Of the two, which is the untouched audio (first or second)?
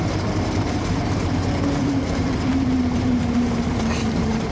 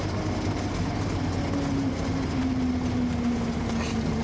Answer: second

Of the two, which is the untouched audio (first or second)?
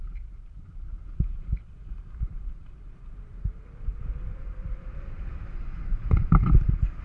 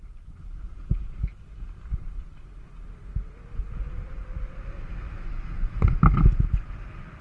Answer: second